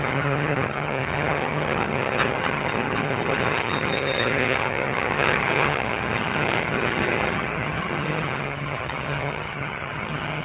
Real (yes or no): no